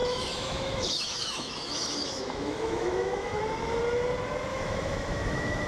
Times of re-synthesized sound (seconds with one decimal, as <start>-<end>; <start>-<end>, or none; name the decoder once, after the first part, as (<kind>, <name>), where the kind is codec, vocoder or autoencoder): 0.0-3.4 (autoencoder, DAC-VAE); 4.5-5.7